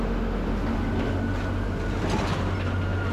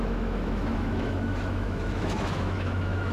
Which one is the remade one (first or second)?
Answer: second